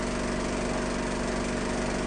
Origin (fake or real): real